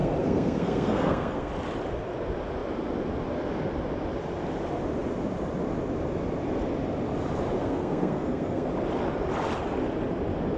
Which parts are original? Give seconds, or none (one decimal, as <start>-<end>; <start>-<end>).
1.5-7.6; 8.7-10.6